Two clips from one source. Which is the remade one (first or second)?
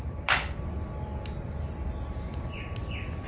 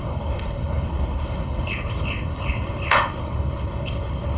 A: second